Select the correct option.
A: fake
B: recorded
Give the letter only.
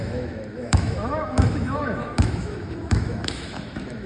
A